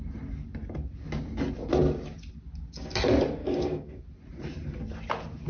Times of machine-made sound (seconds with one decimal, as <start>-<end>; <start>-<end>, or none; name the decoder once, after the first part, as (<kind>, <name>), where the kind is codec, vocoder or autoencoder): 3.4-4.0 (codec, DAC)